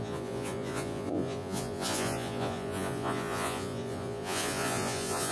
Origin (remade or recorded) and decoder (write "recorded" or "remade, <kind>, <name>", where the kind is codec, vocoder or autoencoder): remade, vocoder, Vocos